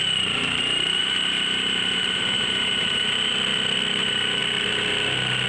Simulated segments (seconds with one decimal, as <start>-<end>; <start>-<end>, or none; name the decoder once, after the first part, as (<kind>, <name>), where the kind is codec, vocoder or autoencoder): 0.0-3.3 (vocoder, BigVGAN v2); 3.9-4.4